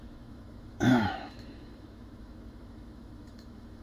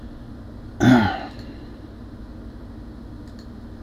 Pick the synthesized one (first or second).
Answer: first